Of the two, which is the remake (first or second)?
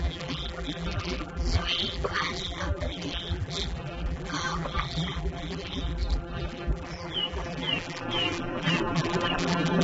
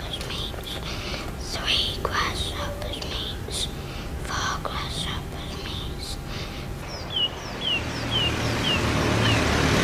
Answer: first